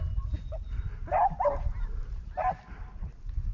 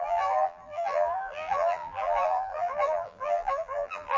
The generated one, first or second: second